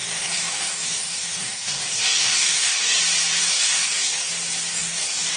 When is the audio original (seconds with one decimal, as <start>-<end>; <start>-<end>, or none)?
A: 3.0-3.4; 4.3-4.7